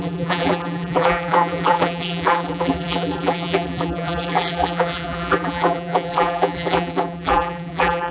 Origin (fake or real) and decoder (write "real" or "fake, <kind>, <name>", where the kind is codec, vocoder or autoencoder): fake, vocoder, BigVGAN v2